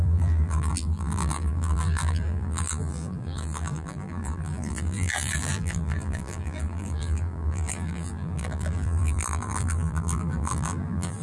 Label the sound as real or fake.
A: fake